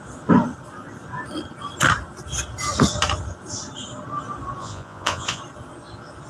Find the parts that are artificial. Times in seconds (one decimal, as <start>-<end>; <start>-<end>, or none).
4.6-5.4